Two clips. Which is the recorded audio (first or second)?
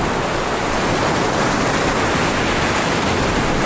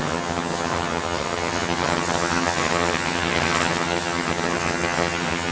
first